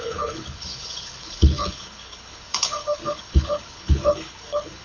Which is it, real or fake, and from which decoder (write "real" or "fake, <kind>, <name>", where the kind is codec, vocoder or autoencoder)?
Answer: fake, codec, HILCodec